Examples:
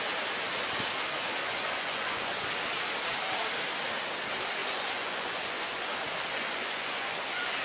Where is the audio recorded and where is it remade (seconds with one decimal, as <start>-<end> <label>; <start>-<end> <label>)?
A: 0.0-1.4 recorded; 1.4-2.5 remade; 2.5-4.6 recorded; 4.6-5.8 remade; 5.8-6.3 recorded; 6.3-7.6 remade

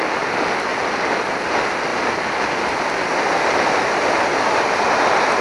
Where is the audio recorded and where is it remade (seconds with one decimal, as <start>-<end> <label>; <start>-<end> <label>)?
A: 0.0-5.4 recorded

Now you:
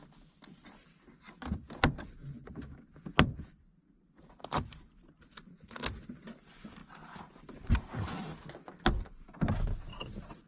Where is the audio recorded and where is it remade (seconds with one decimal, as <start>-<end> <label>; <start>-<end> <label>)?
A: 0.0-2.2 recorded; 2.2-5.8 remade; 5.8-6.8 recorded; 6.8-8.1 remade; 8.1-10.5 recorded

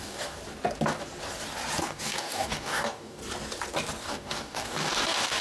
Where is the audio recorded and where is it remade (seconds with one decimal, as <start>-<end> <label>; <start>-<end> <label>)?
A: 0.0-0.4 remade; 0.4-1.8 recorded; 1.8-3.2 remade; 3.2-4.0 recorded; 4.0-5.4 remade

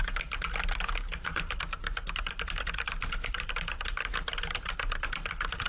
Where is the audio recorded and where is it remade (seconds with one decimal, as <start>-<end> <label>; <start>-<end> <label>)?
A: 0.0-5.7 recorded